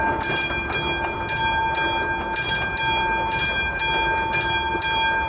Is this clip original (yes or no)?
yes